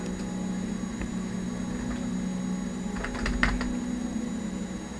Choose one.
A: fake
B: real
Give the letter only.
B